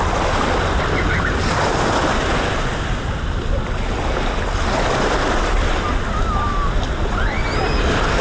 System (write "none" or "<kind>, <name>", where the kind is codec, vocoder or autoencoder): none